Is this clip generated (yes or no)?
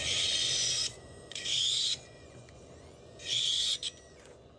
yes